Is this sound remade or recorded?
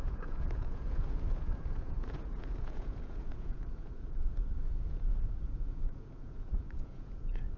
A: remade